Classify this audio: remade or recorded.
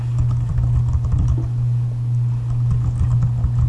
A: recorded